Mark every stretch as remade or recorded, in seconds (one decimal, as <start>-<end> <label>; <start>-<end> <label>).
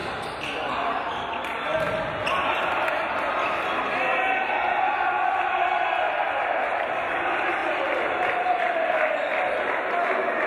0.0-10.5 recorded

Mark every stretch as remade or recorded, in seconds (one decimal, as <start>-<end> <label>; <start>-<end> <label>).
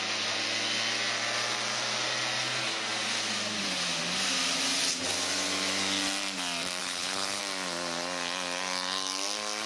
0.0-6.8 recorded; 6.8-7.4 remade; 7.4-9.7 recorded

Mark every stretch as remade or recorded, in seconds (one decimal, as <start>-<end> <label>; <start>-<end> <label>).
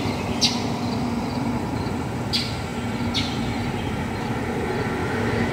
0.0-5.0 recorded; 5.0-5.5 remade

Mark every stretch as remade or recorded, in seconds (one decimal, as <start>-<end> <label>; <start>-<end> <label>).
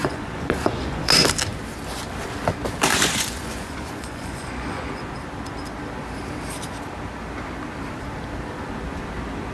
0.0-1.1 remade; 1.1-2.9 recorded; 2.9-5.0 remade; 5.0-9.5 recorded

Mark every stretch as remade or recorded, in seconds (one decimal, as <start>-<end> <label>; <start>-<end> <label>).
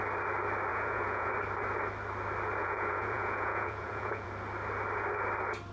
0.0-0.7 recorded; 0.7-1.3 remade; 1.3-2.6 recorded; 2.6-4.3 remade; 4.3-5.7 recorded